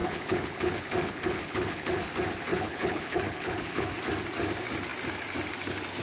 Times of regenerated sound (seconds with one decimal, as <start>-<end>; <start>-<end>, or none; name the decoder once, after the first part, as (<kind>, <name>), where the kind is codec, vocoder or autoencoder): 0.0-2.1 (codec, HILCodec); 2.5-3.9